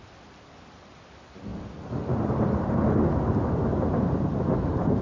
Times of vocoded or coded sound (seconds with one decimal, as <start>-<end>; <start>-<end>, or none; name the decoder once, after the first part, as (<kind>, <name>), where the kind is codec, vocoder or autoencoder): none